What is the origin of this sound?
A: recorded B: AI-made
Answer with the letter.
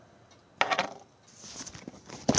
A